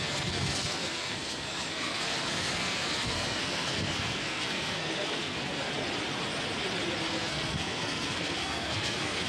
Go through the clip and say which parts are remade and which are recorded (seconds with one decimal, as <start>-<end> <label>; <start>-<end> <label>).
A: 0.0-5.7 remade; 5.7-7.1 recorded; 7.1-9.3 remade